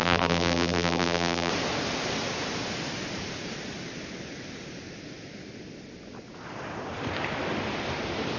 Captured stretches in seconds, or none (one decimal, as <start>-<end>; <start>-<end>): 1.5-8.4